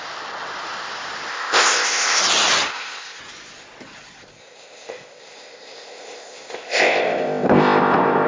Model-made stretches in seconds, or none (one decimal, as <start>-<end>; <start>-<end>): 1.3-2.2; 2.7-3.2; 4.4-8.3